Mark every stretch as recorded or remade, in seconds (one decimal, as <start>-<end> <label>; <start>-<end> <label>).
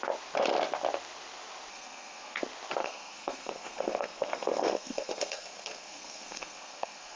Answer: 0.0-1.7 recorded; 1.7-2.4 remade; 2.4-2.8 recorded; 2.8-7.2 remade